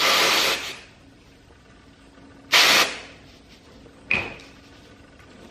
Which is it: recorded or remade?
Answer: remade